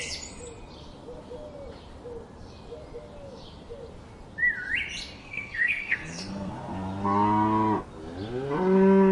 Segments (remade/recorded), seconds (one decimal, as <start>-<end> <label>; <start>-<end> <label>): 0.0-5.2 recorded; 5.2-6.5 remade; 6.5-9.1 recorded